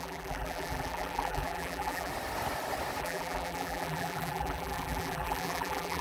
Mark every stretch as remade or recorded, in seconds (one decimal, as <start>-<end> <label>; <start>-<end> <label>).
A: 0.0-2.1 remade; 2.1-3.0 recorded; 3.0-6.0 remade